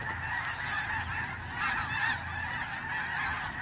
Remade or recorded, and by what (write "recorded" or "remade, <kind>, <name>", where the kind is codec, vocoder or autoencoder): recorded